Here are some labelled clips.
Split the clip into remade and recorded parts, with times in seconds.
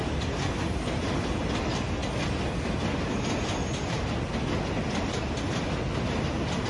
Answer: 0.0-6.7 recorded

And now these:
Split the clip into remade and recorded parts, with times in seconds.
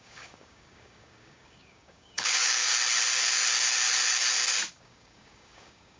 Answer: 0.0-2.7 remade; 2.7-4.7 recorded; 4.7-6.0 remade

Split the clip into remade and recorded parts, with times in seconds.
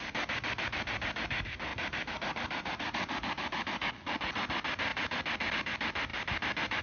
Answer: 0.0-1.7 recorded; 1.7-3.9 remade; 3.9-6.8 recorded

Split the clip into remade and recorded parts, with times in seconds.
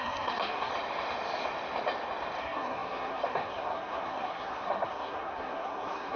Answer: 0.0-0.7 remade; 0.7-2.4 recorded; 2.4-6.2 remade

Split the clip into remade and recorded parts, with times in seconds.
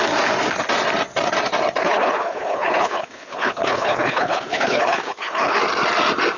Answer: 0.0-1.8 recorded; 1.8-5.6 remade; 5.6-6.4 recorded